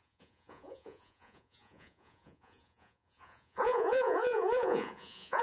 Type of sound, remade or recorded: remade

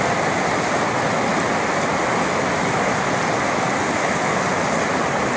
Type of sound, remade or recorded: recorded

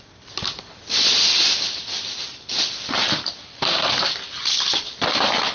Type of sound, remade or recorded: recorded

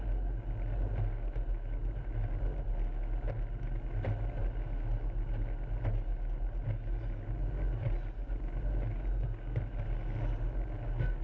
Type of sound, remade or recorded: recorded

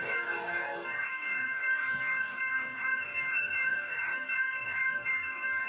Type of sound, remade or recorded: remade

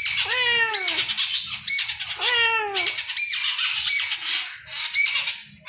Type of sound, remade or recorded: recorded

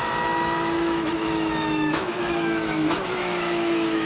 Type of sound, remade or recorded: remade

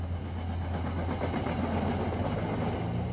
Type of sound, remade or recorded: recorded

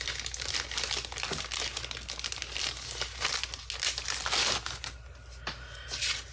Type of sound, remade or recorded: recorded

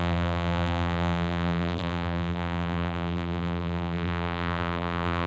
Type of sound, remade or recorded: remade